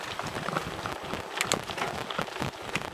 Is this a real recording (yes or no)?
yes